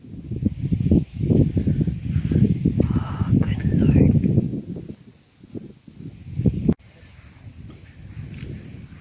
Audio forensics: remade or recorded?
recorded